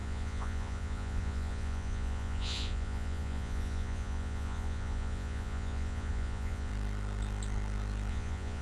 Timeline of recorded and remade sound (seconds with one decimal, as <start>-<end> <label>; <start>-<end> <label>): 0.0-6.7 remade; 6.7-8.1 recorded; 8.1-8.6 remade